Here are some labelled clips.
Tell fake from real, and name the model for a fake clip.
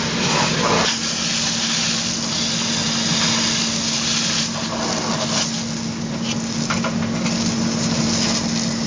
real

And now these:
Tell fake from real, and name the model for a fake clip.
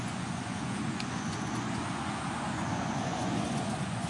fake, vocoder, Vocos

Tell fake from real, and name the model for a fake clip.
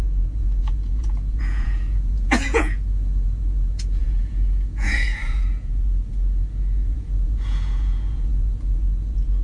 fake, vocoder, Vocos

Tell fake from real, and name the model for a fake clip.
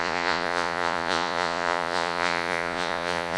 fake, vocoder, Vocos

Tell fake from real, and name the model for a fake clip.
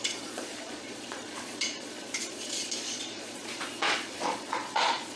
fake, vocoder, Vocos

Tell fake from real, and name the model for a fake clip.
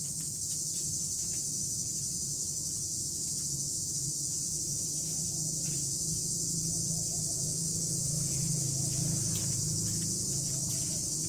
fake, vocoder, Vocos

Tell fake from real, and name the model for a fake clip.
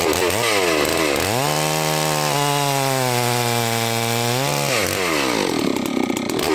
real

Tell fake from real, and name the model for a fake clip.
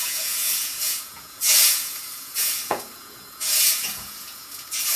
fake, vocoder, Vocos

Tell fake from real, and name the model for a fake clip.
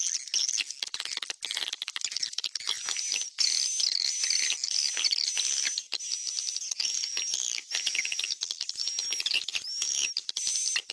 real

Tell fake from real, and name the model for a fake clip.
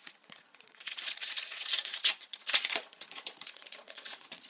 fake, vocoder, Vocos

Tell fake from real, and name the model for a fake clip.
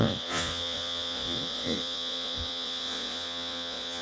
fake, vocoder, Vocos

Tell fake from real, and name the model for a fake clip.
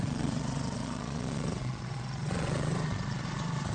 fake, vocoder, Vocos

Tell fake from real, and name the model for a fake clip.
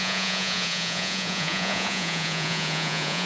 fake, vocoder, Vocos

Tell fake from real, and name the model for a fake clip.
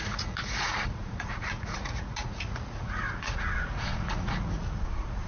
fake, vocoder, Vocos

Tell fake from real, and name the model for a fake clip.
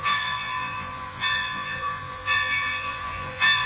fake, vocoder, Vocos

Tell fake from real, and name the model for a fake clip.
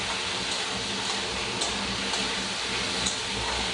real